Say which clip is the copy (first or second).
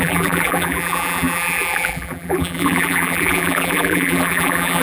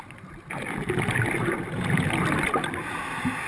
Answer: first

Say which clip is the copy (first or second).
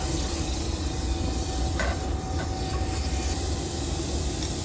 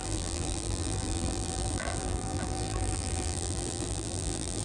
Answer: second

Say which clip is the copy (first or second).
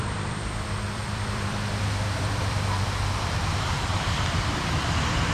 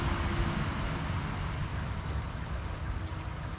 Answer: first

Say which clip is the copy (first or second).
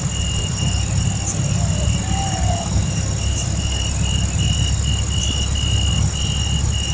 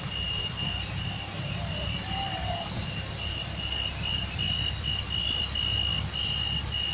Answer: second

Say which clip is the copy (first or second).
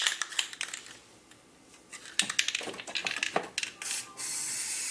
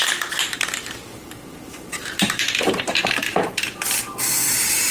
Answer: second